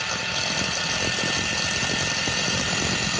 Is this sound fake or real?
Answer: real